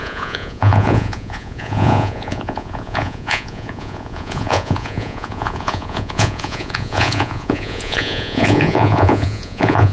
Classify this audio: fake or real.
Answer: fake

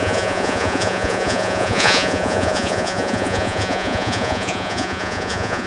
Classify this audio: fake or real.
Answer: fake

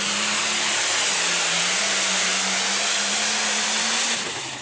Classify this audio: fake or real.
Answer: real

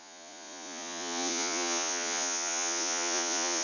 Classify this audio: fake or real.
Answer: fake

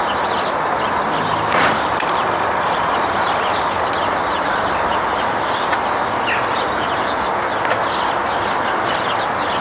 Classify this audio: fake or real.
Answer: real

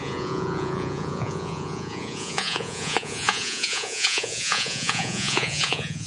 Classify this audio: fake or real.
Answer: fake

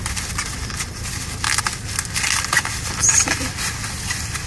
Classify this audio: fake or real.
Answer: real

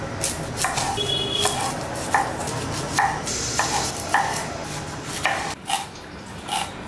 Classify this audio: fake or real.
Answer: real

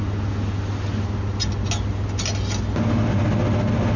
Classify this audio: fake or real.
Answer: real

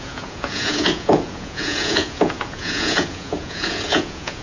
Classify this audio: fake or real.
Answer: fake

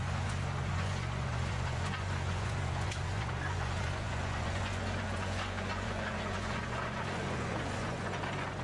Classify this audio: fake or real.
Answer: fake